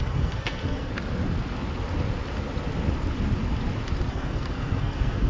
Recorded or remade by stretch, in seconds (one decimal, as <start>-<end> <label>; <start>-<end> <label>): 0.0-0.9 remade; 0.9-4.1 recorded; 4.1-5.3 remade